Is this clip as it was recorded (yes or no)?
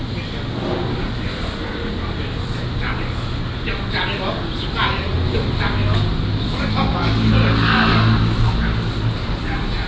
yes